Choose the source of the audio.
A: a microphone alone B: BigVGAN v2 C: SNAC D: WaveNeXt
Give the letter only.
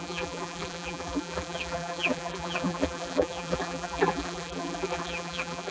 B